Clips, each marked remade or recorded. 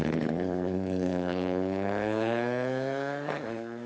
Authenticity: remade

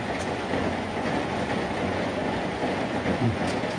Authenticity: remade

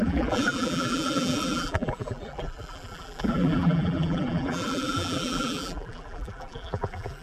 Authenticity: remade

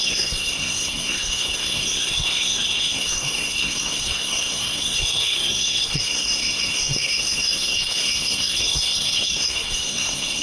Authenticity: remade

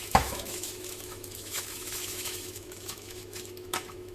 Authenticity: remade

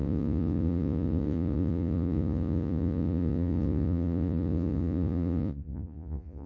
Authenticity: remade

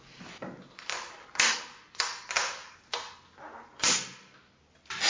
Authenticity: recorded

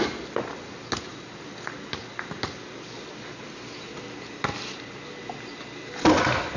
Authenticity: recorded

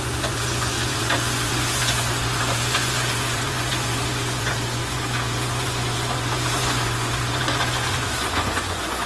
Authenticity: remade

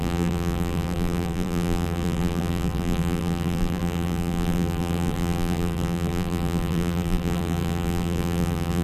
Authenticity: remade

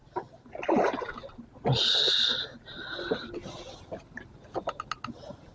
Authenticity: recorded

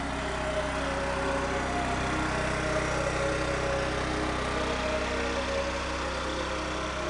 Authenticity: recorded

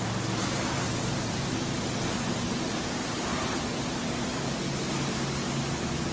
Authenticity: recorded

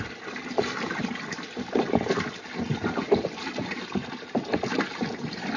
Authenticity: recorded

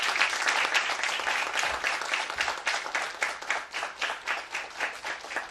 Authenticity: recorded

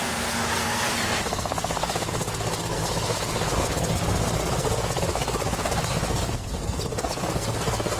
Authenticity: remade